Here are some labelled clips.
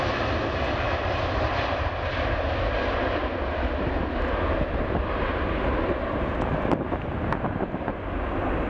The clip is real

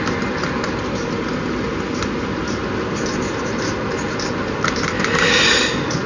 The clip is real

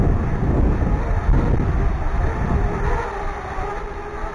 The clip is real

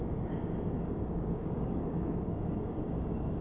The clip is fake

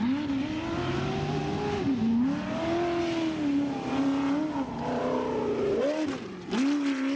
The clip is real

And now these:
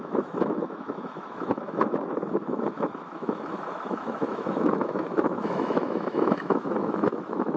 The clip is fake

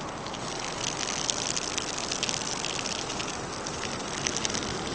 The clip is real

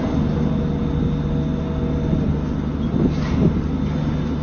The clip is real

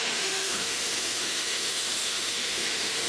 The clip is fake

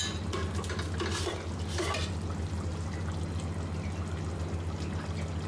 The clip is real